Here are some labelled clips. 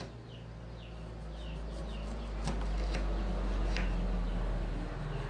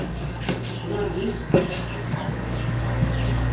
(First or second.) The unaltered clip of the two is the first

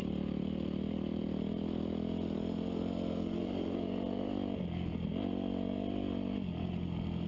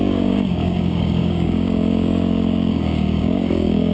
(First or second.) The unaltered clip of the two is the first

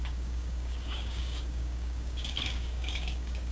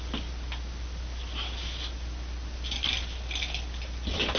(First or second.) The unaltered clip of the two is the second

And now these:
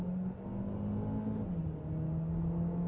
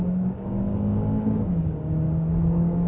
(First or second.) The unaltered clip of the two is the first